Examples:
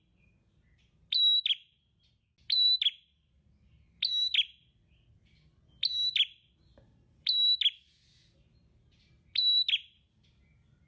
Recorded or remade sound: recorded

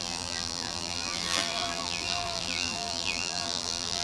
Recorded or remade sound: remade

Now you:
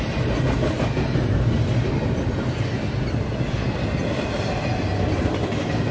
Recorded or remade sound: recorded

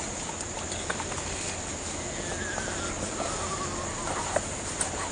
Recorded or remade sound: recorded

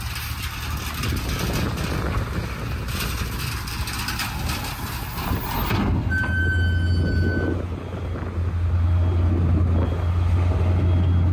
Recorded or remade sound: recorded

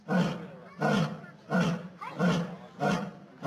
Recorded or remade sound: recorded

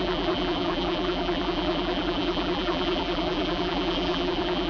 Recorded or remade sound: remade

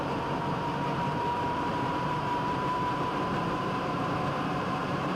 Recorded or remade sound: remade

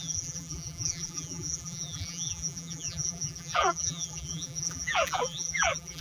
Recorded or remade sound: remade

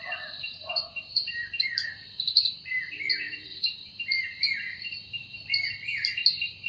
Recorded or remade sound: remade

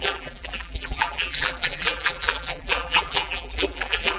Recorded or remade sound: remade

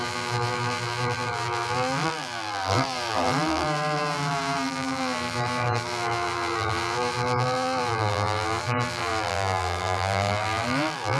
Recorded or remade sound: remade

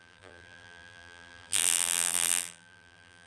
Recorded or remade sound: remade